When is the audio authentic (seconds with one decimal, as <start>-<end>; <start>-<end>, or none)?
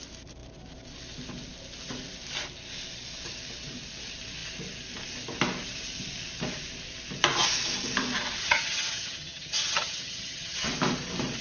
0.0-8.4; 10.7-11.4